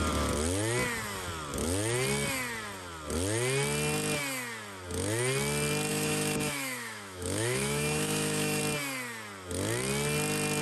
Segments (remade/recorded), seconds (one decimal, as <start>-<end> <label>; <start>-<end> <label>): 0.0-5.9 recorded; 5.9-8.6 remade; 8.6-10.6 recorded